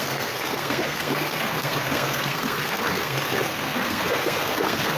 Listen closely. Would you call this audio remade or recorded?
remade